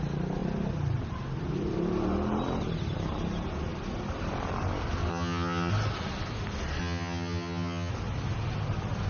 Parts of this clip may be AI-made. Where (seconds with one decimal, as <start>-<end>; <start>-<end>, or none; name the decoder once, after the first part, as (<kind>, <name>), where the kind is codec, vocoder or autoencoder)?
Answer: 5.1-5.7 (vocoder, HiFi-GAN); 6.8-7.9